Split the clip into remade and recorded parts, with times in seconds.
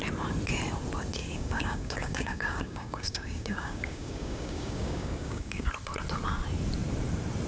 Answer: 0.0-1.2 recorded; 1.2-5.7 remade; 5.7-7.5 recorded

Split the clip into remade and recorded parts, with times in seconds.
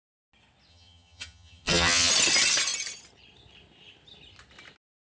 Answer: 0.0-0.7 recorded; 0.7-2.1 remade; 2.1-5.2 recorded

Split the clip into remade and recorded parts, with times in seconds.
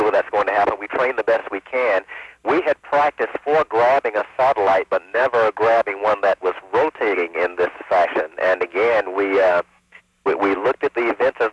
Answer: 0.0-0.9 remade; 0.9-1.4 recorded; 1.4-2.1 remade; 2.1-4.2 recorded; 4.2-6.6 remade; 6.6-8.7 recorded; 8.7-10.0 remade; 10.0-11.5 recorded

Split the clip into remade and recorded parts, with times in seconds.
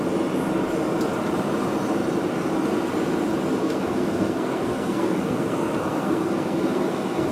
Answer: 0.0-3.6 recorded; 3.6-7.3 remade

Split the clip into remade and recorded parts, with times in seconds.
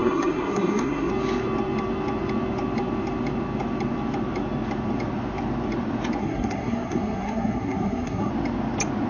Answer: 0.0-1.1 remade; 1.1-6.2 recorded; 6.2-8.3 remade; 8.3-9.1 recorded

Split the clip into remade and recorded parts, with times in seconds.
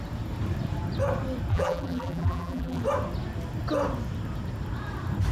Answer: 0.0-1.5 recorded; 1.5-2.8 remade; 2.8-5.3 recorded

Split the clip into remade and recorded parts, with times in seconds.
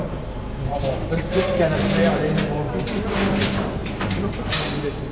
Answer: 0.0-0.7 recorded; 0.7-1.6 remade; 1.6-3.8 recorded; 3.8-5.1 remade